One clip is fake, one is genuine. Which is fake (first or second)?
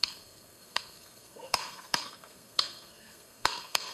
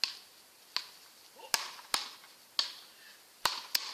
first